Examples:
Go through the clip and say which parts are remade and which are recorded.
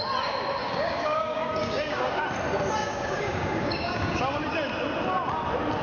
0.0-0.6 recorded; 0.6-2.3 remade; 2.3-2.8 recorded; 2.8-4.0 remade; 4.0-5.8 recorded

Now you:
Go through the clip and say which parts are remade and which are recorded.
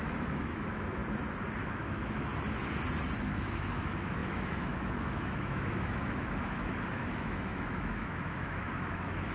0.0-1.0 remade; 1.0-1.7 recorded; 1.7-2.3 remade; 2.3-3.2 recorded; 3.2-9.3 remade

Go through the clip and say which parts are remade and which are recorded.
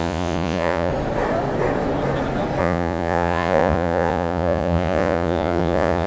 0.0-0.9 remade; 0.9-2.6 recorded; 2.6-6.1 remade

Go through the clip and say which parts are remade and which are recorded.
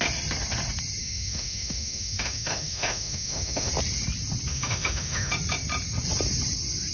0.0-1.0 recorded; 1.0-3.7 remade; 3.7-4.5 recorded; 4.5-5.3 remade; 5.3-6.9 recorded